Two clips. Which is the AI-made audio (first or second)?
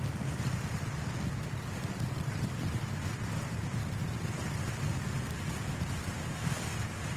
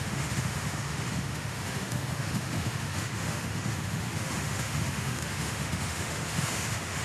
second